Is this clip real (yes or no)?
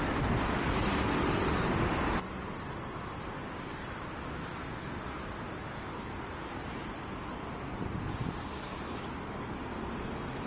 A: yes